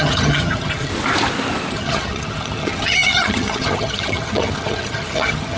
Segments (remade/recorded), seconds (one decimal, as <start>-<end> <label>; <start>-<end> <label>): 0.0-0.9 remade; 0.9-1.7 recorded; 1.7-5.6 remade